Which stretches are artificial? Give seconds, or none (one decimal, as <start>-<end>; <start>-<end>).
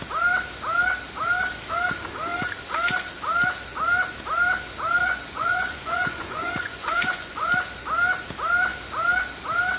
5.0-7.5